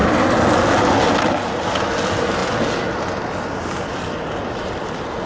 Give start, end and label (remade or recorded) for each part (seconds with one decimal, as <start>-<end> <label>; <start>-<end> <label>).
0.0-5.3 recorded